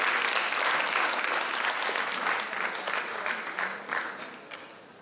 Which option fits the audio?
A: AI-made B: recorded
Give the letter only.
B